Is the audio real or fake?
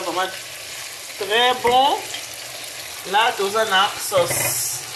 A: real